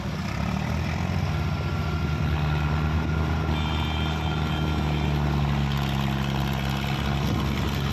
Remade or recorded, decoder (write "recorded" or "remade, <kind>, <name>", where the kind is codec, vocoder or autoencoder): recorded